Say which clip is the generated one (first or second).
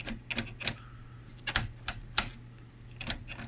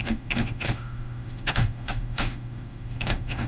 second